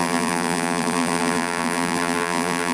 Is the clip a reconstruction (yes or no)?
yes